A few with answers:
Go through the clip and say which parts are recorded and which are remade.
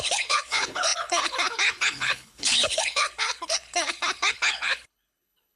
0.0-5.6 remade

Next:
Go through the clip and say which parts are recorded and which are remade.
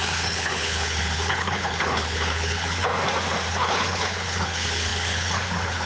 0.0-2.9 remade; 2.9-3.5 recorded; 3.5-5.9 remade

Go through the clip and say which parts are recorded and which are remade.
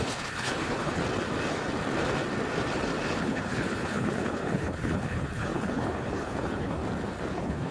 0.0-1.0 remade; 1.0-3.2 recorded; 3.2-6.8 remade; 6.8-7.3 recorded; 7.3-7.7 remade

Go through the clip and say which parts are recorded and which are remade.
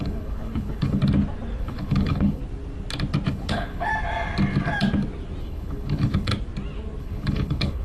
0.0-1.0 remade; 1.0-1.6 recorded; 1.6-2.4 remade; 2.4-3.3 recorded; 3.3-3.9 remade; 3.9-5.4 recorded; 5.4-6.3 remade; 6.3-7.0 recorded; 7.0-7.8 remade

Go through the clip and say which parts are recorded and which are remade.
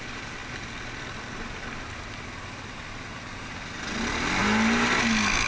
0.0-5.5 recorded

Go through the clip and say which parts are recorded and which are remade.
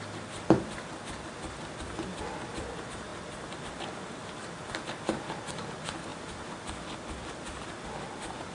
0.0-8.5 recorded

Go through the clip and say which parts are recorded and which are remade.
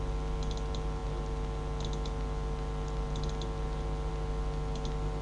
0.0-5.2 recorded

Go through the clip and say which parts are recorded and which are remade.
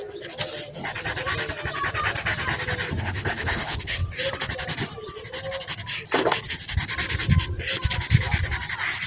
0.0-3.0 recorded; 3.0-4.0 remade; 4.0-9.1 recorded